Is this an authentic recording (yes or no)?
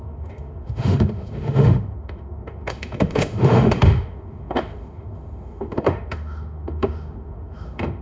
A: no